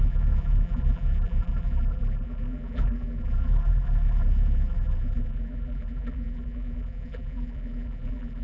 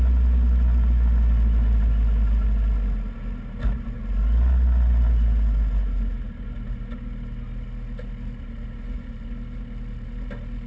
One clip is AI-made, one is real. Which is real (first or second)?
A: second